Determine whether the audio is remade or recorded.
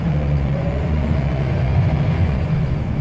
remade